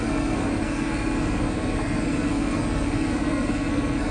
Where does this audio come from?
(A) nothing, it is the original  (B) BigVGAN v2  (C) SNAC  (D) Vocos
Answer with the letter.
C